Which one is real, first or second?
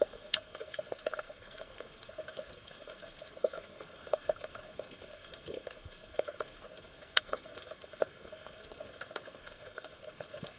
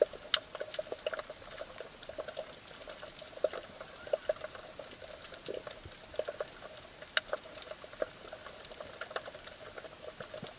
second